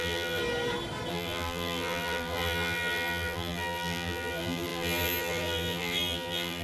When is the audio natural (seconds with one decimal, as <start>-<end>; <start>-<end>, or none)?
0.4-1.1